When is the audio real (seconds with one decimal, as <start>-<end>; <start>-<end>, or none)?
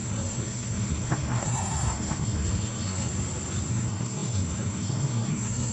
3.1-3.7